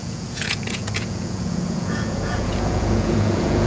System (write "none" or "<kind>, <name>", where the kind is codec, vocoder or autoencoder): vocoder, Vocos